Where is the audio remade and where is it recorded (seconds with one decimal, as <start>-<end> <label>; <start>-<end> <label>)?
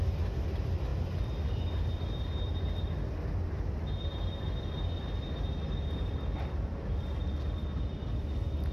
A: 0.0-8.7 recorded